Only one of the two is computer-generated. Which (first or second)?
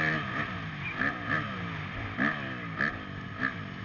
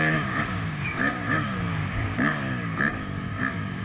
second